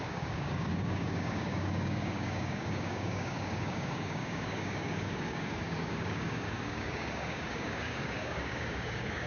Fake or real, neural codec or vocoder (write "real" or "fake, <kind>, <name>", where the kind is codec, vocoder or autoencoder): fake, codec, DAC